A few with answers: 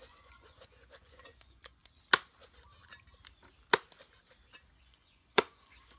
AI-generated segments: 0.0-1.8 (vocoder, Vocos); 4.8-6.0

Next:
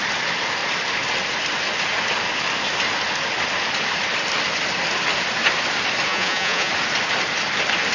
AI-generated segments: 6.1-6.7 (vocoder, Vocos)